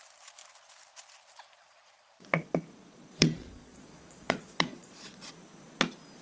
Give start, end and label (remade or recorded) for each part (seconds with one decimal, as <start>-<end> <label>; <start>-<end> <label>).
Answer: 0.0-1.6 recorded; 1.6-5.3 remade; 5.3-6.2 recorded